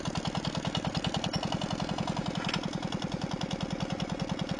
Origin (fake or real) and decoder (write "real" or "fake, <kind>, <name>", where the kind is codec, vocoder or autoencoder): real